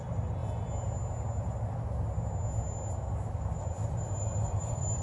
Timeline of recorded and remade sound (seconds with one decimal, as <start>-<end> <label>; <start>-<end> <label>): 0.0-0.4 remade; 0.4-3.4 recorded; 3.4-5.0 remade